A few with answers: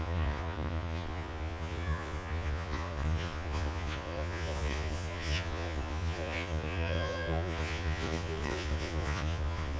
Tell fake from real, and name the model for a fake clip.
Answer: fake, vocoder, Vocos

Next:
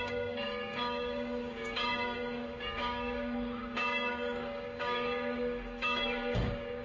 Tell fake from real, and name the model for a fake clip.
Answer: fake, codec, DAC